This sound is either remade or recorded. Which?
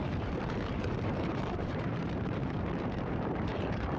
remade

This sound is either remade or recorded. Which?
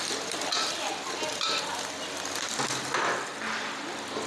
recorded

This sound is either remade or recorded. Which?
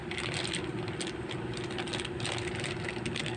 recorded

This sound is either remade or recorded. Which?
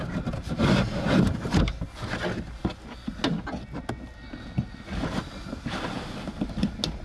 recorded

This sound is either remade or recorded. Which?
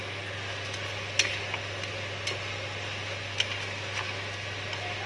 recorded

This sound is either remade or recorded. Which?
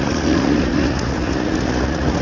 remade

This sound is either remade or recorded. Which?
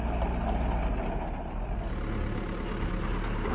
recorded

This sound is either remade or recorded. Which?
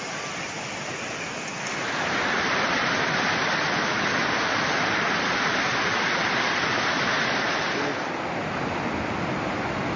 recorded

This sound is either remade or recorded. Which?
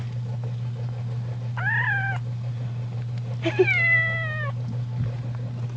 recorded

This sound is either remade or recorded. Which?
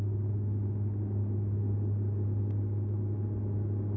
recorded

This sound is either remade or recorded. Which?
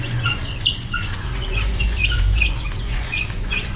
remade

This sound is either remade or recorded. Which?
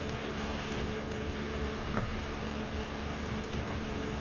remade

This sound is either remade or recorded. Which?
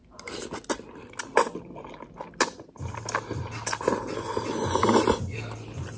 recorded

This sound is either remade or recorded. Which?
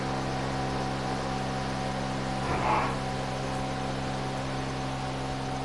recorded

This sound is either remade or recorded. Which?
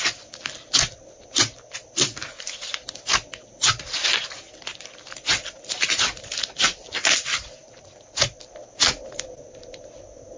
recorded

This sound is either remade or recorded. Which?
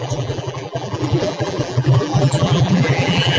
remade